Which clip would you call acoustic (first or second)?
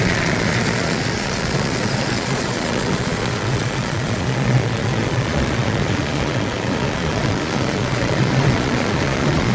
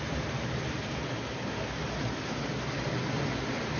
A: second